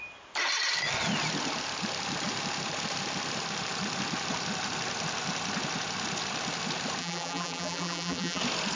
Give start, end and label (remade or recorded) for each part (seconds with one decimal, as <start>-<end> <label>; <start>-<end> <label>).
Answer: 0.0-7.0 recorded; 7.0-8.4 remade; 8.4-8.8 recorded